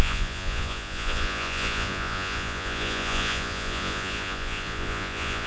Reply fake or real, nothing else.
fake